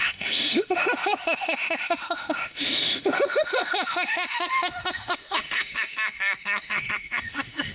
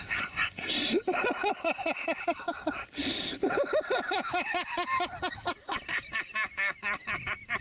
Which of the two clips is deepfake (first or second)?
first